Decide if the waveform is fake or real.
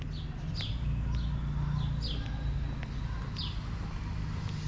real